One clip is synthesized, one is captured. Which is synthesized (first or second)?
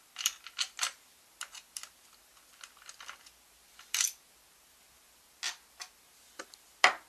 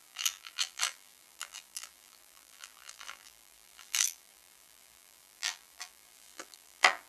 second